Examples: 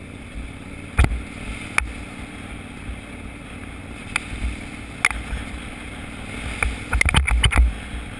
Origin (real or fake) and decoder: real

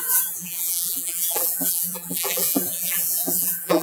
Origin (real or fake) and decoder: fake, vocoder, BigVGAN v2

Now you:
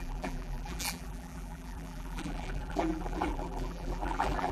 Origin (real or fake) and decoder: fake, vocoder, BigVGAN v2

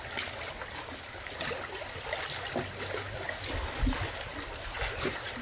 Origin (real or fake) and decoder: real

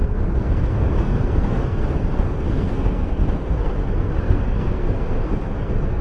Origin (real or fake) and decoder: fake, codec, SNAC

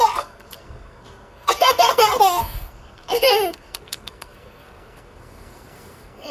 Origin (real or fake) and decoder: fake, codec, SNAC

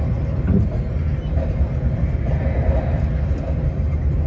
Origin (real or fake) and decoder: real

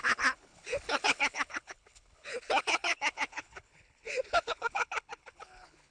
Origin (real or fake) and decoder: fake, codec, HILCodec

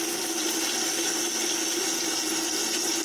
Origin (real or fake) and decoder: real